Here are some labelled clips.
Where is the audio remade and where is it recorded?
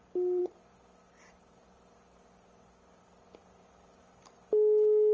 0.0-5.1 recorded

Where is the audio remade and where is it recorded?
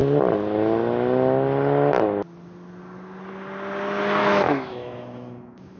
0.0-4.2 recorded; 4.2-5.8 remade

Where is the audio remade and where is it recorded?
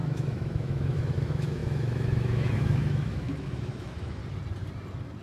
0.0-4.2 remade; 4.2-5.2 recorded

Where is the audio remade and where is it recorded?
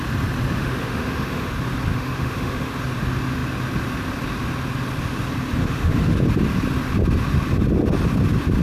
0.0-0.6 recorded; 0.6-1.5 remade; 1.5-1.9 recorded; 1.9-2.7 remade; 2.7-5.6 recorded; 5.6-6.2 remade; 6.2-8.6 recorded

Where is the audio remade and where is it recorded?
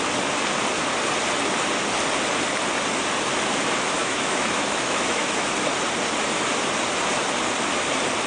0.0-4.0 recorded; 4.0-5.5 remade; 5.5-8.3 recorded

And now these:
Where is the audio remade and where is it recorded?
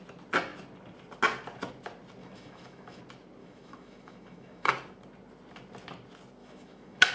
0.0-2.2 recorded; 2.2-3.0 remade; 3.0-3.4 recorded; 3.4-4.7 remade; 4.7-6.4 recorded; 6.4-7.1 remade